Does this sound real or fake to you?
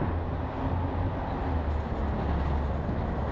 real